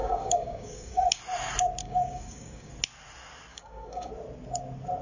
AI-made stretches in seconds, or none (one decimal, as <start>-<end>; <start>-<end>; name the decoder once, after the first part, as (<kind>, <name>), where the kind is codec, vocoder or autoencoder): 0.0-1.2 (codec, DAC); 1.8-2.7; 3.5-4.1